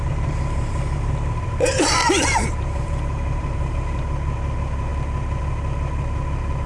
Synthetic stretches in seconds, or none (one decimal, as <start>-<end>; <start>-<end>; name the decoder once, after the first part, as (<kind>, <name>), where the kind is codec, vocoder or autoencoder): 0.0-4.0 (vocoder, BigVGAN v2)